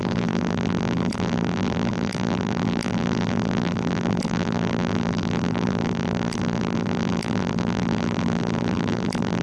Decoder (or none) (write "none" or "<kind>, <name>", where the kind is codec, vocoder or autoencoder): vocoder, BigVGAN v2